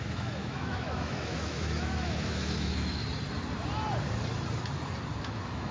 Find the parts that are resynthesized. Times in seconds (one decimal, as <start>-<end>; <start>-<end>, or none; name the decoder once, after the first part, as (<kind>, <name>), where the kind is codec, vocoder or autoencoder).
0.0-3.0 (autoencoder, DAC-VAE); 5.2-5.7